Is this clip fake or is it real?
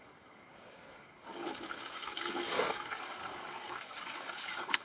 fake